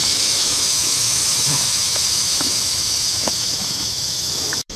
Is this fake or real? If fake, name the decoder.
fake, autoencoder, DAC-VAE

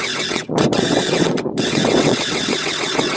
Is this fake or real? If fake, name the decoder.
fake, vocoder, WaveNeXt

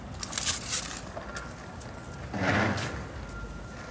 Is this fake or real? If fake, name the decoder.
real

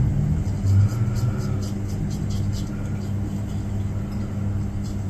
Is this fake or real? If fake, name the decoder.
real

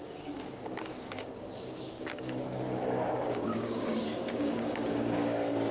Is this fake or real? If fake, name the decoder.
fake, codec, DAC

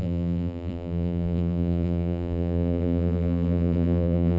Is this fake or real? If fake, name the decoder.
fake, vocoder, BigVGAN v2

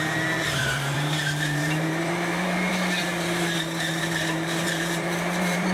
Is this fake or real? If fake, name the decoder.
fake, vocoder, BigVGAN v2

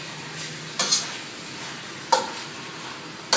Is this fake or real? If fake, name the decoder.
real